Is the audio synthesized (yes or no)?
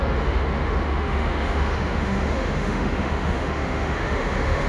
yes